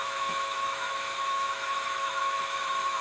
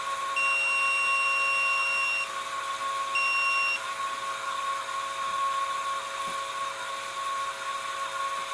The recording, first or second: second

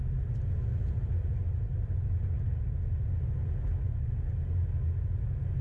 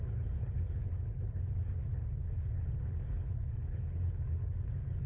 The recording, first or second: first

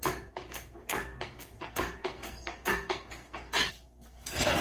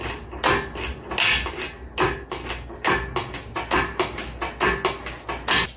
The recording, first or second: second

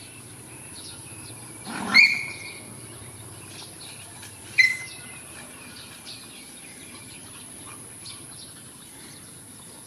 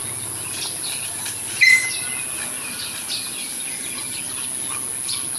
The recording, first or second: second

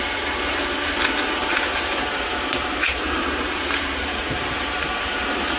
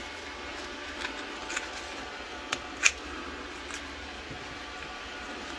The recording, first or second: second